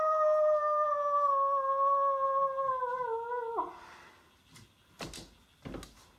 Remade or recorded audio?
recorded